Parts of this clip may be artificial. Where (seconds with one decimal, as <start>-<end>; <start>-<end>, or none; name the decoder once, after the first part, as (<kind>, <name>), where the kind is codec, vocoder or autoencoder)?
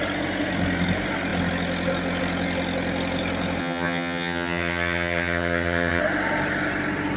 3.6-6.0 (vocoder, HiFi-GAN)